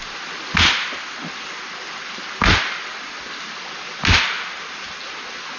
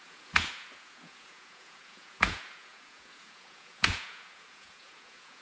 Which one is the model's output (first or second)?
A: second